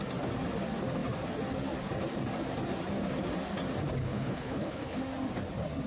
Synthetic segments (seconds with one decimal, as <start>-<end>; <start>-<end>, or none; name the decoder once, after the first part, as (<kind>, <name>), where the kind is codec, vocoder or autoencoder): 4.0-5.0 (codec, HILCodec)